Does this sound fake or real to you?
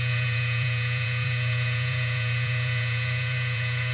fake